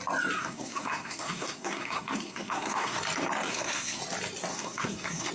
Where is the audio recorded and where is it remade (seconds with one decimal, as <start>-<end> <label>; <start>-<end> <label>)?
0.0-0.4 recorded; 0.4-3.0 remade; 3.0-3.5 recorded; 3.5-4.0 remade; 4.0-4.5 recorded; 4.5-5.3 remade